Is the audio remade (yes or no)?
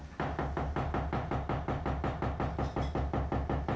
no